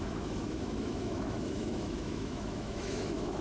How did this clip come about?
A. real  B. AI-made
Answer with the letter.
B